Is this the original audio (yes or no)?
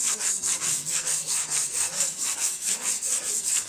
no